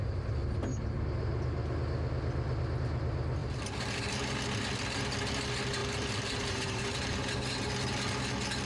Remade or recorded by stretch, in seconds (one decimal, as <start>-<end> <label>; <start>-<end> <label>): 0.0-3.4 recorded; 3.4-4.1 remade; 4.1-5.8 recorded; 5.8-7.7 remade; 7.7-8.7 recorded